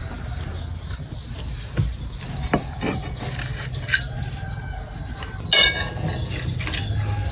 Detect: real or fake real